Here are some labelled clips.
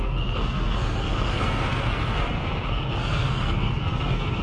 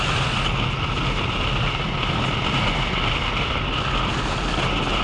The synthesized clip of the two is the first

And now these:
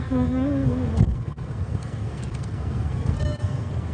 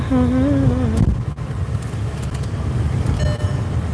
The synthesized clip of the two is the first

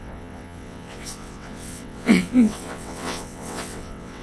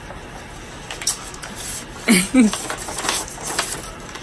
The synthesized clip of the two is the first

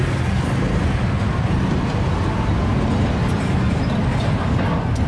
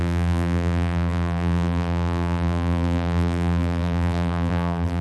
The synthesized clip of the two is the second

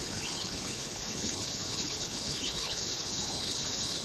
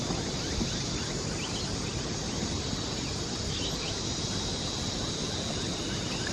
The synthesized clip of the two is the first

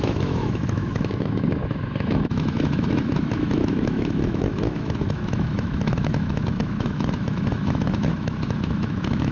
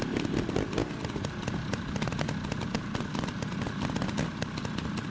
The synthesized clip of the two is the first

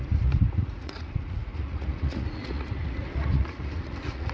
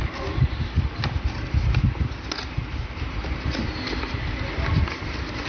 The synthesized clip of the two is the first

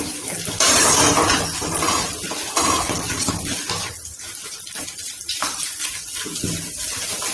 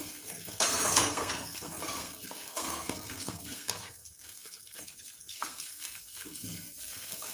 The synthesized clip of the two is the second